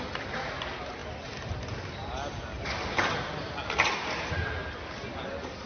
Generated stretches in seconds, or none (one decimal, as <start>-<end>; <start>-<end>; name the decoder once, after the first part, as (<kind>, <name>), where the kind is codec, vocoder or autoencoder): none